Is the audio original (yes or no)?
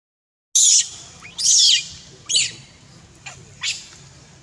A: yes